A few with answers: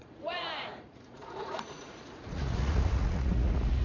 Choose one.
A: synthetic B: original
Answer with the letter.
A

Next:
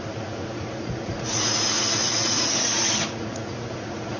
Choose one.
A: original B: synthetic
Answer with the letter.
B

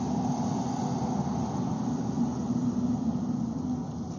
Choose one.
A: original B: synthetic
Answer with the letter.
A